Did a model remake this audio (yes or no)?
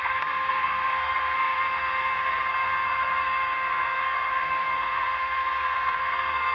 yes